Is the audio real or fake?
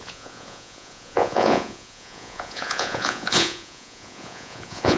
fake